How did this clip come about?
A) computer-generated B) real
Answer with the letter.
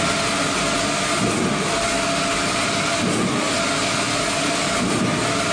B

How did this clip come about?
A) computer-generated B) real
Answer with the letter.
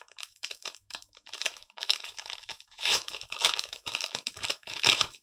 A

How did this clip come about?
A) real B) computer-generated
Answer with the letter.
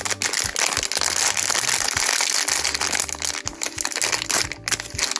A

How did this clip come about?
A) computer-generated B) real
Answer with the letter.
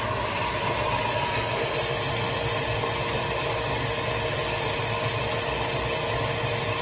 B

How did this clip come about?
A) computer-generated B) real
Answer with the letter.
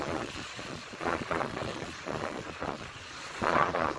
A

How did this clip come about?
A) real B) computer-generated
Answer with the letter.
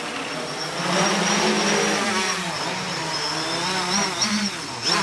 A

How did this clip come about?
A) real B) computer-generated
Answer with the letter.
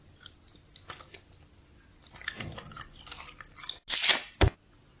A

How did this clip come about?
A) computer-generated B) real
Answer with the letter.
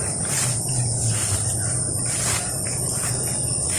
B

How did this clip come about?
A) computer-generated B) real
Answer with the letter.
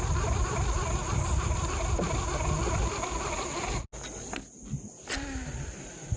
B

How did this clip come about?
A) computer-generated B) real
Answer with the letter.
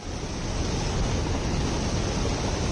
B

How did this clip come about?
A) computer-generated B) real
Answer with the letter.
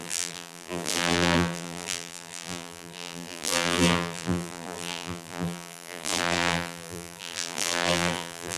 A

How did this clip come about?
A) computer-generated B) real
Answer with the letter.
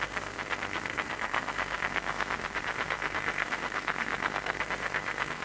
A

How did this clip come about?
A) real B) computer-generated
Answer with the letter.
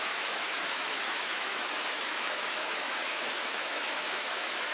B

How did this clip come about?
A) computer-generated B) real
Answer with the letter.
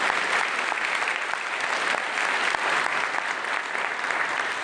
B